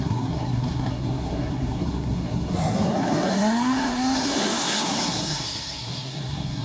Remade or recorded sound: remade